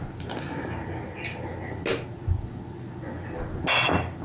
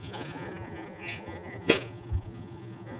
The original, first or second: first